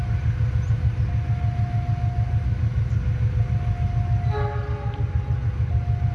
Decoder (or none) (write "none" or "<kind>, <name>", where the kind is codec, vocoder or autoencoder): none